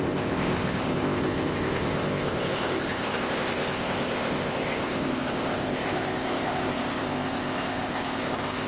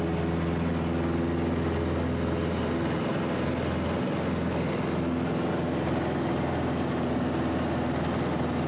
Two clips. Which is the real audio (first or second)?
second